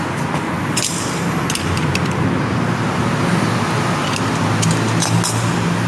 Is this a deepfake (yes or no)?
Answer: no